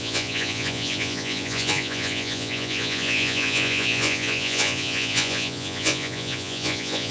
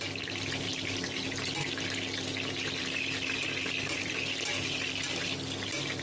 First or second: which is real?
second